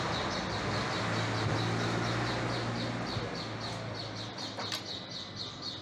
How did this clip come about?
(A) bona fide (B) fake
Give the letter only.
A